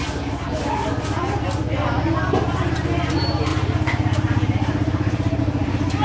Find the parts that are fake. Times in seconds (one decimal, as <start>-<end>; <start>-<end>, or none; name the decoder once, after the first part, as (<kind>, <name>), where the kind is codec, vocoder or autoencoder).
3.5-5.4 (vocoder, BigVGAN v2)